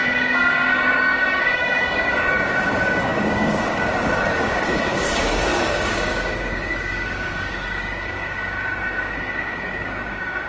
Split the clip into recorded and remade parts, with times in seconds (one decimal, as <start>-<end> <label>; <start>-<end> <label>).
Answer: 0.0-10.5 remade